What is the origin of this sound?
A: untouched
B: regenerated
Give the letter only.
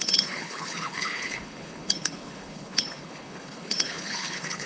B